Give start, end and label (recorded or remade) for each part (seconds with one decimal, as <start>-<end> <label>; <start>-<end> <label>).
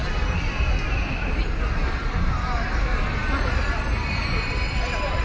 0.0-5.2 recorded